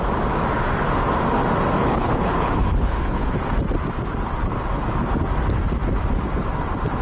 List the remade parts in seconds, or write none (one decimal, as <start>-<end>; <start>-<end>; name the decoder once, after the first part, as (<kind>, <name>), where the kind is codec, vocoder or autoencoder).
1.8-3.3 (codec, HILCodec)